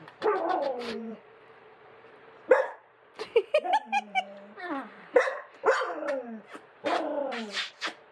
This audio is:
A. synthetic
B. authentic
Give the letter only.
A